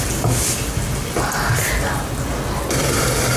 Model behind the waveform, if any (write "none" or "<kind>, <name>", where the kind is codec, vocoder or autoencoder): none